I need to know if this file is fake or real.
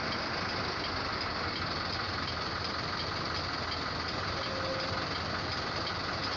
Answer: real